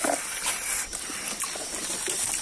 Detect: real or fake real